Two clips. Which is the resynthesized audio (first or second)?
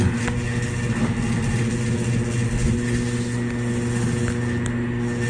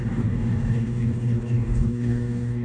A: second